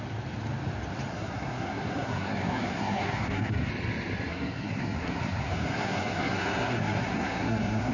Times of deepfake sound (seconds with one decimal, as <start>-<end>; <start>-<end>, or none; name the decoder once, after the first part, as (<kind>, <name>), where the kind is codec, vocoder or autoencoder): 1.1-3.7 (codec, SNAC); 4.3-7.9